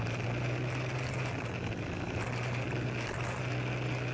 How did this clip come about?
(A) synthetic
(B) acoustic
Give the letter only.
B